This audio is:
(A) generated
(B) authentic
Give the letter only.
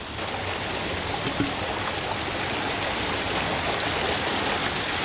B